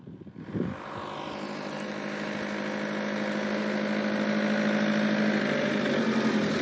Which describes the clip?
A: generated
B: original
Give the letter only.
B